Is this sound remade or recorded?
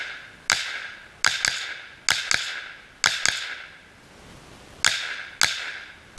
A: recorded